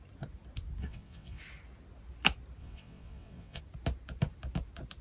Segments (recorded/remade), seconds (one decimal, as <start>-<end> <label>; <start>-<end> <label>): 0.0-0.8 recorded; 0.8-1.4 remade; 1.4-2.6 recorded; 2.6-3.6 remade; 3.6-5.0 recorded